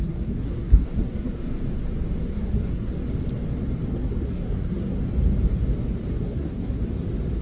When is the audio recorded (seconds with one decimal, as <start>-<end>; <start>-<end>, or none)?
1.6-2.3; 2.9-3.9; 5.0-6.1; 6.8-7.4